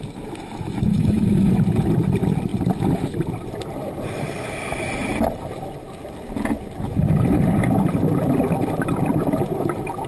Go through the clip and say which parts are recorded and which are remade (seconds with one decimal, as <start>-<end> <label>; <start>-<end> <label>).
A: 0.0-0.9 recorded; 0.9-1.6 remade; 1.6-10.1 recorded